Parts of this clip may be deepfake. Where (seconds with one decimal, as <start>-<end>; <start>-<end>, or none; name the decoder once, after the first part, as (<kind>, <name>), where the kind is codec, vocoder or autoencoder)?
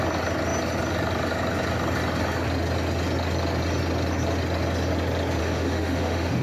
5.4-6.4 (autoencoder, DAC-VAE)